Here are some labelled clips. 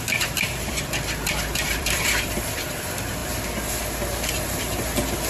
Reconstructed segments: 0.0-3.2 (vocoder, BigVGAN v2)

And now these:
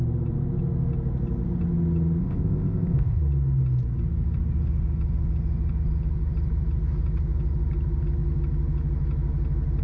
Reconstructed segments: 2.2-3.2 (codec, ZipCodec)

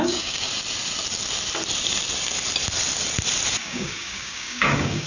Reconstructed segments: 0.0-0.5 (codec, DAC); 3.6-5.1

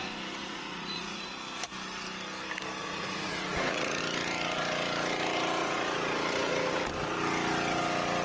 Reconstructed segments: 0.4-1.3 (vocoder, Vocos); 2.8-4.0; 5.6-6.8

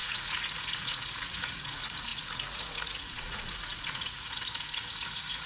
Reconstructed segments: 0.0-5.5 (vocoder, Vocos)

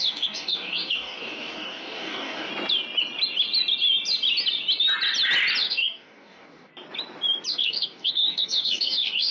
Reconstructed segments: 0.0-2.5 (codec, DAC); 5.6-6.7; 7.5-9.3